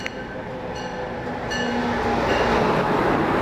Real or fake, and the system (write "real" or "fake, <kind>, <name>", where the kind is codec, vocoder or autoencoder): real